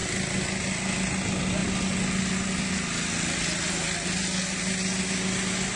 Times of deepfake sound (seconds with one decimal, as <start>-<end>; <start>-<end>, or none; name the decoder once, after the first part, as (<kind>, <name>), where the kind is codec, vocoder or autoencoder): none